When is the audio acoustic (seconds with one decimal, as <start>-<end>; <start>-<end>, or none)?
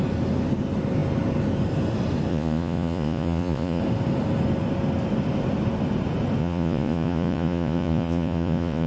0.0-2.3; 3.8-6.4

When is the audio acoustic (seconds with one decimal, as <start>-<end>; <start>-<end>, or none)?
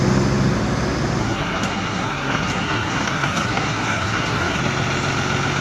0.0-1.2; 4.6-5.6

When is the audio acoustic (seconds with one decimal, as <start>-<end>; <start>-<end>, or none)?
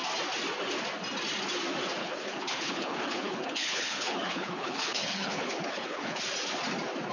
0.0-2.0; 6.2-7.1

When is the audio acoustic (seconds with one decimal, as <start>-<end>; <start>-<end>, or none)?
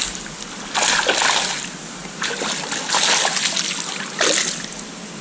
0.0-5.2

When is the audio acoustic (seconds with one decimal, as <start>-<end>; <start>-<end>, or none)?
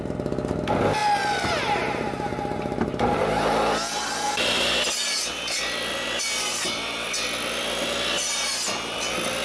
0.0-9.4